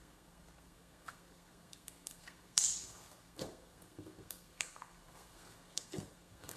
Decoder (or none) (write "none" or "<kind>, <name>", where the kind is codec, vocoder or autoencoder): codec, SNAC